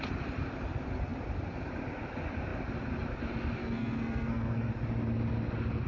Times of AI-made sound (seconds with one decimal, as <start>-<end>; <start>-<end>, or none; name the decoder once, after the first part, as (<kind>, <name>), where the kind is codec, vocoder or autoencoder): 3.6-4.7 (codec, SNAC)